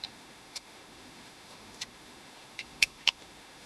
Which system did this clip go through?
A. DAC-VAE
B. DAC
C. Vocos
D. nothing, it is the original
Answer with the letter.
A